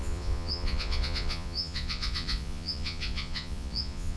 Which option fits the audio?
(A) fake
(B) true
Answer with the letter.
A